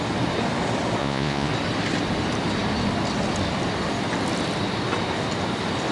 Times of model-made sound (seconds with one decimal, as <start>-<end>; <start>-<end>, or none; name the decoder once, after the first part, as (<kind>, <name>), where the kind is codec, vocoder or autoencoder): 1.0-1.5 (vocoder, Vocos)